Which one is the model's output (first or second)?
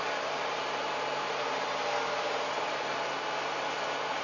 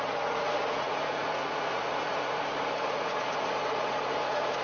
second